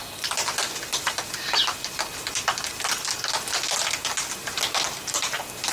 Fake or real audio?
real